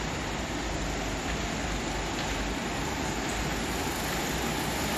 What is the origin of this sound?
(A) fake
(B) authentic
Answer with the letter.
B